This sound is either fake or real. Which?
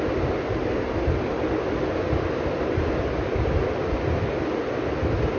real